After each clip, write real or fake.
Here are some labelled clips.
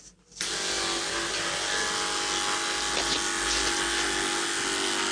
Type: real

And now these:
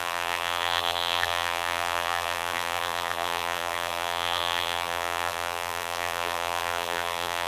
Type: fake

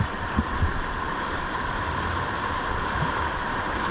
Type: fake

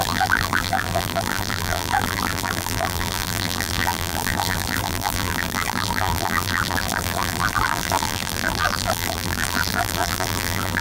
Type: fake